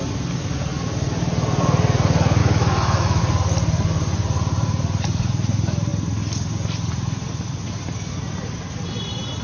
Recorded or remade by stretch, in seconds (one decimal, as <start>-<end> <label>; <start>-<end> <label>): 0.0-2.4 recorded; 2.4-3.2 remade; 3.2-9.4 recorded

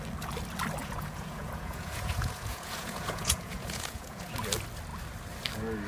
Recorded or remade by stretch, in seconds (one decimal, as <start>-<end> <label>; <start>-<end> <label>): 0.0-0.8 recorded; 0.8-4.3 remade; 4.3-5.9 recorded

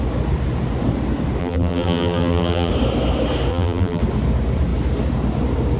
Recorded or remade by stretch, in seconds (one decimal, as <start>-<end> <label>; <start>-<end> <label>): 0.0-1.4 recorded; 1.4-2.7 remade; 2.7-3.5 recorded; 3.5-4.0 remade; 4.0-5.8 recorded

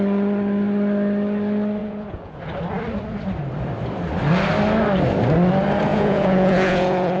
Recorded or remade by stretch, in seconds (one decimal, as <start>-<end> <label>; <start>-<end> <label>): 0.0-1.8 recorded; 1.8-2.4 remade; 2.4-5.9 recorded; 5.9-7.2 remade

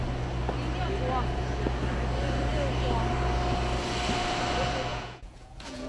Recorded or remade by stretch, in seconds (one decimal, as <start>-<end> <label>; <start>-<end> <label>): 0.0-4.9 recorded; 4.9-5.9 remade

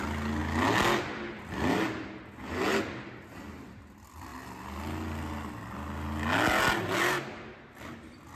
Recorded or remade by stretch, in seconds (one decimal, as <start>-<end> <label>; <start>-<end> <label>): 0.0-8.4 recorded

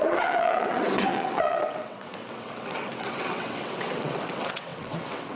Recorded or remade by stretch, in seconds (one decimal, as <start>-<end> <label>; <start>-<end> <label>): 0.0-5.4 remade